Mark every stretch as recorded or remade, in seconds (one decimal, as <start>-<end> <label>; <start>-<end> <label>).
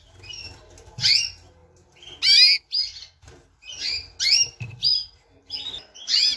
0.0-6.4 recorded